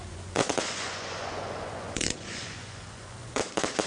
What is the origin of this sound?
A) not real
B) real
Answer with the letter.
A